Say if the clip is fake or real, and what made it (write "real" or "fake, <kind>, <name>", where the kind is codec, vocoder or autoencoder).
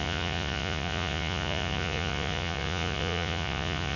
fake, vocoder, Vocos